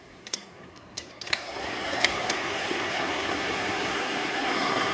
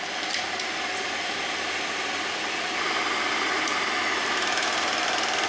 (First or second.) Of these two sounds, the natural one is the second